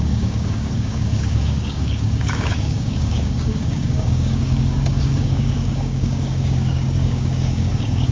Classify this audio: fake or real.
fake